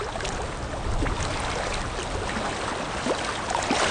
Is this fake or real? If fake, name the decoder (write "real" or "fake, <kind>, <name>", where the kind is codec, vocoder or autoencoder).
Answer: real